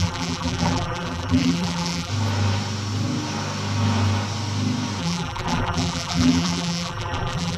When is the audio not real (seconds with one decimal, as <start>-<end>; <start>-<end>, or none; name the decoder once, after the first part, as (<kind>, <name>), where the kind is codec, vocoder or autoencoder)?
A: 0.0-2.1 (vocoder, BigVGAN v2); 5.0-7.6